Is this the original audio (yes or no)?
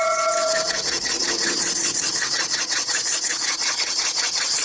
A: no